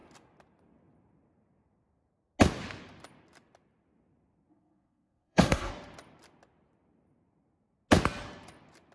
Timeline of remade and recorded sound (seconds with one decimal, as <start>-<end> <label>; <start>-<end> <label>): 0.0-4.5 recorded; 4.5-5.7 remade; 5.7-8.9 recorded